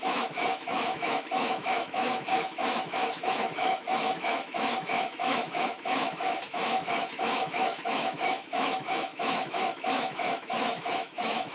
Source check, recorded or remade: remade